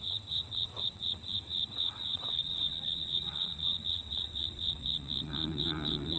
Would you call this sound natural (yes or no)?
no